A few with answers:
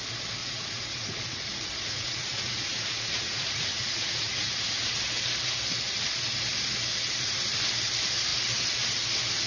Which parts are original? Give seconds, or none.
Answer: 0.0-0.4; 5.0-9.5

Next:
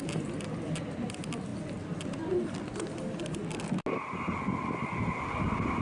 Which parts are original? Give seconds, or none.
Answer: 0.0-5.8